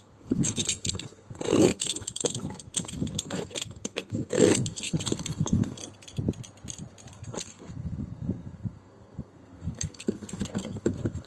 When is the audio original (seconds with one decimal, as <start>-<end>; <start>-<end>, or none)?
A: 5.8-7.1

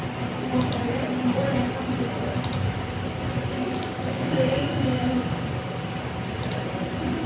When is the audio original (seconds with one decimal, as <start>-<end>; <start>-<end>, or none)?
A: 0.0-3.5; 5.4-7.3

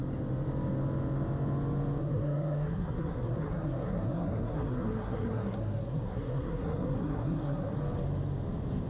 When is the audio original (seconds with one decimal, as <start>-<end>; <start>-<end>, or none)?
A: 0.0-2.0; 7.8-8.9

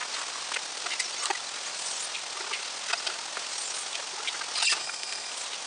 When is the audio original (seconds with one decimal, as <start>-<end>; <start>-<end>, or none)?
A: 0.0-4.8; 5.3-5.7

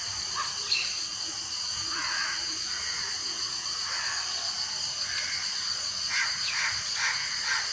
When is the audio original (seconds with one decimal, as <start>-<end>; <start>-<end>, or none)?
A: 0.0-1.1; 4.0-5.7

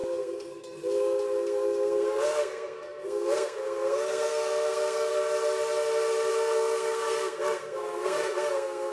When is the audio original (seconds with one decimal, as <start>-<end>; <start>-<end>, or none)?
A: 5.1-6.3

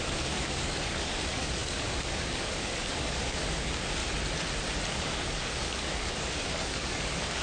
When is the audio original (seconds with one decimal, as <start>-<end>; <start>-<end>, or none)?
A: 4.0-4.9